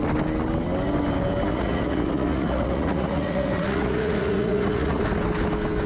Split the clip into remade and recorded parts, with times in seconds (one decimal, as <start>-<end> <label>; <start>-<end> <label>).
0.0-1.5 recorded; 1.5-5.0 remade; 5.0-5.9 recorded